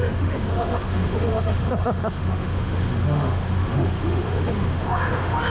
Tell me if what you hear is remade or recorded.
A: remade